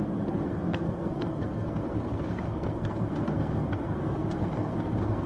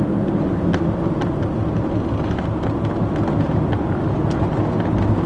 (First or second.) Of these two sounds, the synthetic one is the first